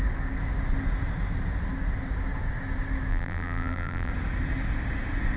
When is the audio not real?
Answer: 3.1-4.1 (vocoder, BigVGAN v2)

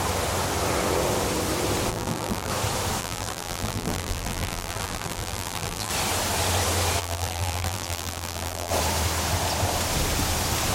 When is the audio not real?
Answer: 1.9-2.5 (vocoder, BigVGAN v2); 3.0-5.9; 7.0-8.7

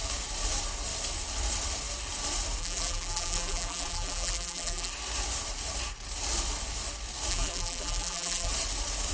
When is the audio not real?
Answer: 2.6-4.9 (vocoder, BigVGAN v2); 7.3-8.5

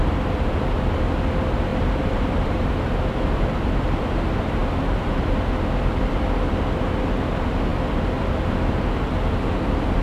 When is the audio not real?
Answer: 1.7-2.7 (vocoder, BigVGAN v2)